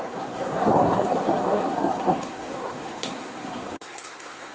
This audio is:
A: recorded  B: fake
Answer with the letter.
B